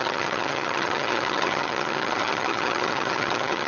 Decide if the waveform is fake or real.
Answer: fake